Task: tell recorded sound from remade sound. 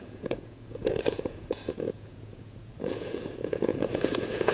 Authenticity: remade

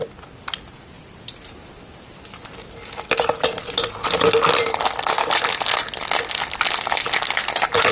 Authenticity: recorded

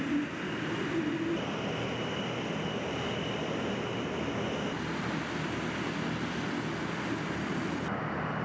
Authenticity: recorded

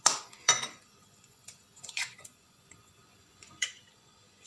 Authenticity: remade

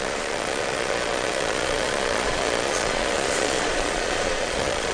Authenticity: remade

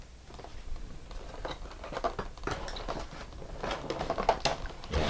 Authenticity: recorded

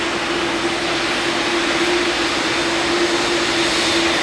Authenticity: recorded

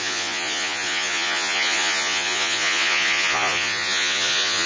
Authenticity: remade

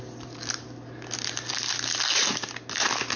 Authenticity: recorded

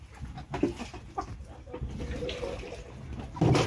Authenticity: recorded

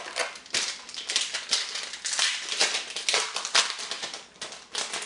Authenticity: recorded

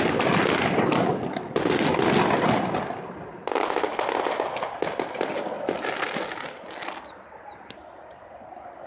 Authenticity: recorded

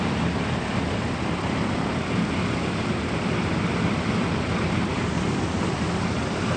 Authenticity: recorded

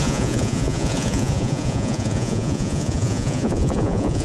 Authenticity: remade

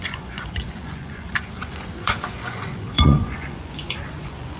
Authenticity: remade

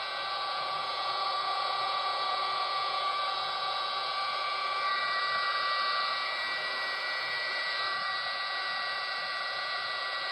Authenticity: remade